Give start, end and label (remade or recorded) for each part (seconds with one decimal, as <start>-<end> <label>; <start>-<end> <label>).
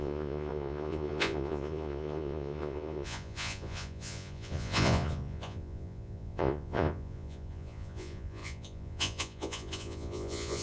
0.0-10.6 remade